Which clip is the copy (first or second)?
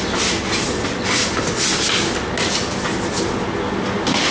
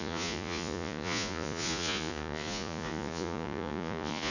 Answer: second